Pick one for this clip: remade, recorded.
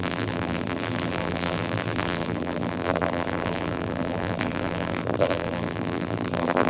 remade